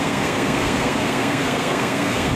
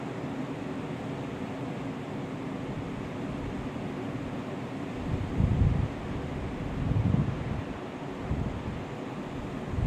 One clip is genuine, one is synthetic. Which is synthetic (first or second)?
first